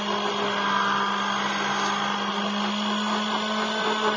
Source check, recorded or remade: recorded